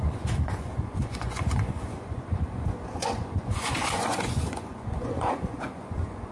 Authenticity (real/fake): fake